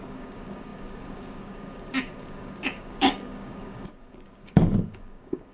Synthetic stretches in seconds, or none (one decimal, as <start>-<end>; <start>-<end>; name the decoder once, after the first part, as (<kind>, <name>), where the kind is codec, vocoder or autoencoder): 0.0-5.5 (codec, DAC)